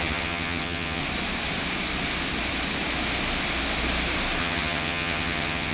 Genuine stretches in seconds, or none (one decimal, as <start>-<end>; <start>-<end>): 1.0-4.4